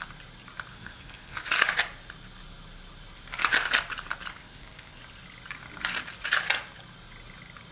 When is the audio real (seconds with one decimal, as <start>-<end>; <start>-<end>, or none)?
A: 0.0-0.7; 1.4-4.3; 5.0-7.7